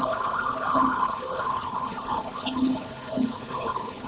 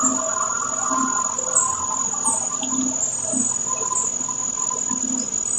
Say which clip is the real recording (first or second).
second